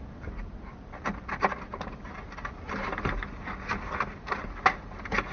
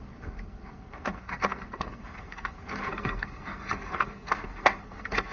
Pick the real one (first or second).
first